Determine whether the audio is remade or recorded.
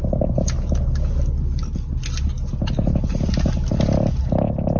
recorded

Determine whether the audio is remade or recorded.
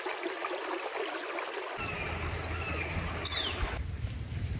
recorded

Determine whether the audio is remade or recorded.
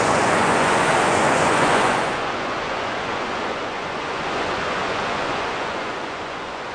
remade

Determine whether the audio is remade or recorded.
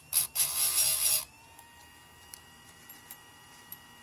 remade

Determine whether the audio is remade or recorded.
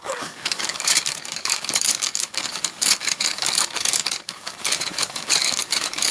remade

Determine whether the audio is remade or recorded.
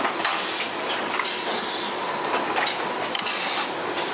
recorded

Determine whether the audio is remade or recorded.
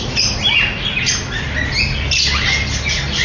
recorded